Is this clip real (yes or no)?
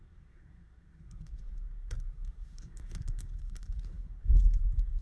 no